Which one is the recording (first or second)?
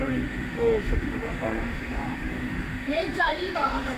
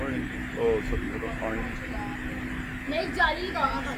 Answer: second